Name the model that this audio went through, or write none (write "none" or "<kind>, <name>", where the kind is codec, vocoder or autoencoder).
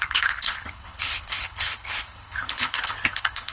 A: codec, HILCodec